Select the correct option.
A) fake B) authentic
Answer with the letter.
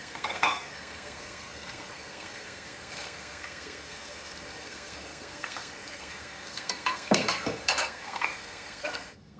A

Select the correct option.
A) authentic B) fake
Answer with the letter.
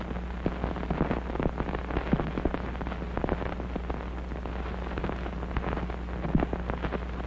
A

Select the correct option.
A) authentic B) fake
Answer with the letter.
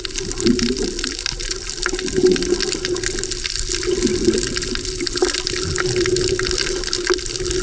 A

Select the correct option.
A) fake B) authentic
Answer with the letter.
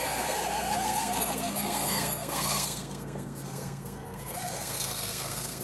A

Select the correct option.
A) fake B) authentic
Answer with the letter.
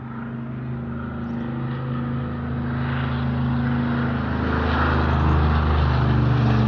B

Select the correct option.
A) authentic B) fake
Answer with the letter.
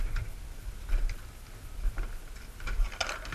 A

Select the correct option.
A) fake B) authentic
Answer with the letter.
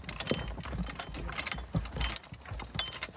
B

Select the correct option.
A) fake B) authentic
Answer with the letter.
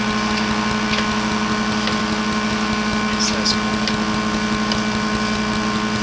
B